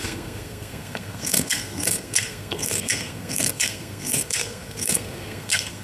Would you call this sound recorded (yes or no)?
no